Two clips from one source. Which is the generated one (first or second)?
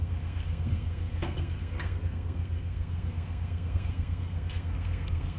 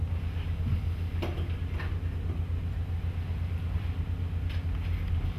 first